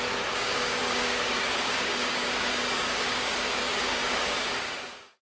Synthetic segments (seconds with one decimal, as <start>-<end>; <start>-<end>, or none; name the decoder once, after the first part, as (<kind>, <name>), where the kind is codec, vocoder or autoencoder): 0.0-5.2 (codec, DAC)